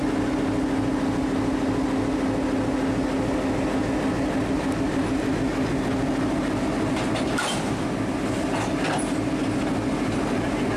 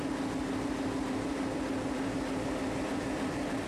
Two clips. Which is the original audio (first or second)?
first